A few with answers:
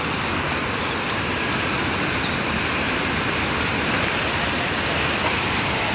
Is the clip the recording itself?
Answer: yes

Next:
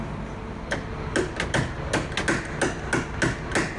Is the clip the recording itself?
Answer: yes